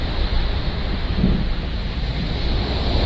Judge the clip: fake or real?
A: fake